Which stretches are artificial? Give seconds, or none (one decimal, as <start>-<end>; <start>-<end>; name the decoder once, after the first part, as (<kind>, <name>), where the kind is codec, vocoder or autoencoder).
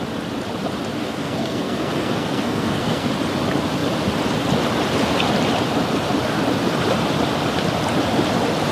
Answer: 1.0-3.1 (codec, SNAC)